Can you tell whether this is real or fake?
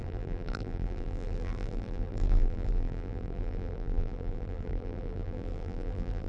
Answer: fake